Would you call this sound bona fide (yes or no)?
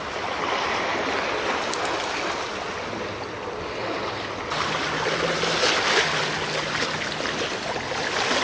yes